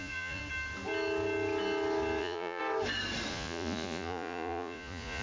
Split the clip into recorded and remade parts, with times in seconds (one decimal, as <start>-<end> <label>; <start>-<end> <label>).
0.0-0.4 remade; 0.4-2.2 recorded; 2.2-2.6 remade; 2.6-3.3 recorded; 3.3-5.2 remade